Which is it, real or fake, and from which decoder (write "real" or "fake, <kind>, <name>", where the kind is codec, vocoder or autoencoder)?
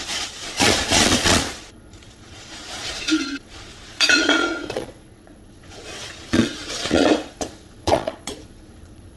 fake, vocoder, Vocos